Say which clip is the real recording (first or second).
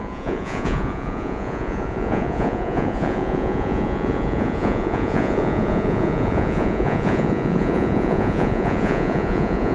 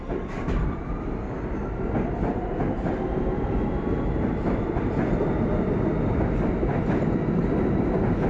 second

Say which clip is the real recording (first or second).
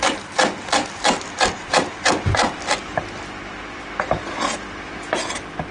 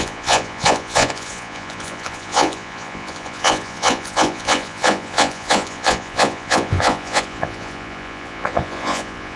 first